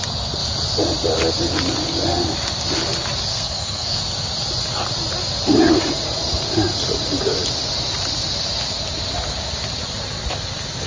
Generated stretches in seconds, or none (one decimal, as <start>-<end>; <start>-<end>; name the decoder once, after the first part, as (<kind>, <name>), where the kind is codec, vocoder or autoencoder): 3.3-4.0 (codec, SNAC)